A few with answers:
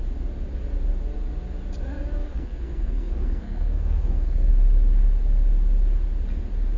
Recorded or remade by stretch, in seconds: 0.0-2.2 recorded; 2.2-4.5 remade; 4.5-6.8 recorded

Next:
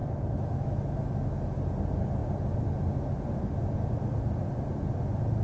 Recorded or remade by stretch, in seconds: 0.0-0.7 remade; 0.7-5.4 recorded

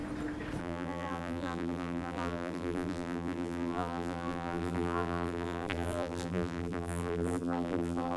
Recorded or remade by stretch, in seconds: 0.0-0.6 recorded; 0.6-8.2 remade